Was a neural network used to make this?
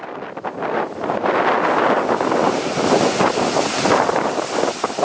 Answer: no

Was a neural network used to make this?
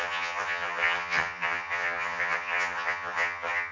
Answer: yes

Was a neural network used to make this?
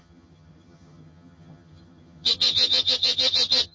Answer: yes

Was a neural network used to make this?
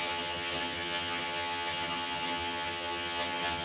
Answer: yes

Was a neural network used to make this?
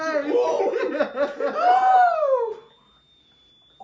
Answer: no